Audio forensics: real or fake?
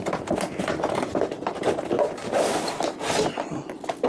real